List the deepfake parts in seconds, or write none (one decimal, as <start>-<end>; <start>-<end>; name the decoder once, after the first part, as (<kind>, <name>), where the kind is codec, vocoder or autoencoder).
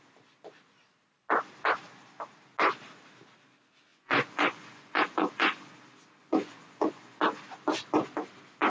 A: 3.9-5.7 (vocoder, Vocos); 6.2-7.2